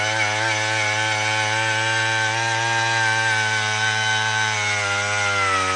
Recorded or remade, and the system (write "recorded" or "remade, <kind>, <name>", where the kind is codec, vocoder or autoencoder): recorded